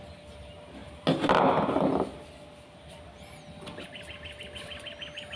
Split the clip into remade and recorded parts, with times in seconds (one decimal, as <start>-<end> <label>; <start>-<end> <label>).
0.0-5.3 recorded